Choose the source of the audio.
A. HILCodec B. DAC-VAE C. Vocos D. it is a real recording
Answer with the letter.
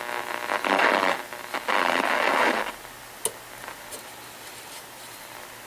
D